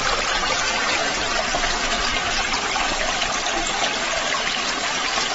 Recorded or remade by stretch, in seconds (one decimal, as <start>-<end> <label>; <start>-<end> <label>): 0.0-2.1 recorded; 2.1-3.3 remade; 3.3-5.3 recorded